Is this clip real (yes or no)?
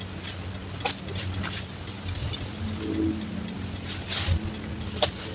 yes